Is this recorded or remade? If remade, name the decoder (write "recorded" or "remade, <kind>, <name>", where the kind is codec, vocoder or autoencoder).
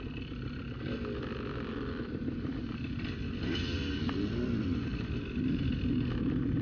remade, vocoder, BigVGAN v2